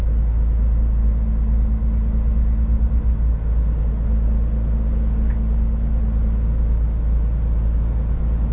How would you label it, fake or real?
real